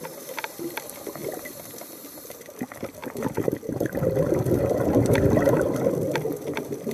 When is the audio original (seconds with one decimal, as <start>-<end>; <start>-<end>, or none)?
none